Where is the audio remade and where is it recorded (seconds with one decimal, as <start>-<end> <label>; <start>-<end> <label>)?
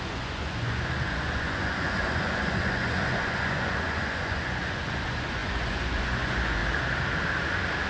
0.0-6.6 remade; 6.6-7.9 recorded